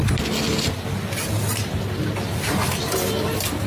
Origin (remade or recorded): recorded